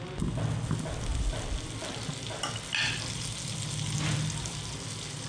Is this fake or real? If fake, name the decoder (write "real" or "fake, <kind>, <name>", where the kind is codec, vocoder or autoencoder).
real